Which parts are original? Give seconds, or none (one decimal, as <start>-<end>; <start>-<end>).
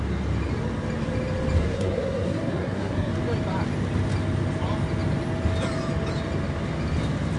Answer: 0.0-1.6; 3.1-7.4